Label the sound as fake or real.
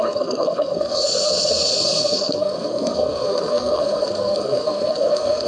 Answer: fake